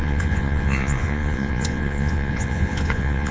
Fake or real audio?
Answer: fake